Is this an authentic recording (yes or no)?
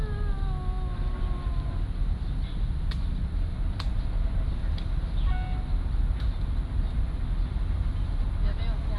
yes